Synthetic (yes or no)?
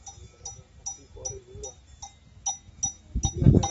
no